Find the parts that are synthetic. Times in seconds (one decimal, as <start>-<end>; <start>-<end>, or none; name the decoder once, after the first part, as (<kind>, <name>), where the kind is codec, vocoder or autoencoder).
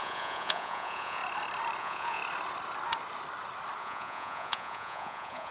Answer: 0.0-1.2 (vocoder, Vocos); 1.8-2.2; 3.8-5.5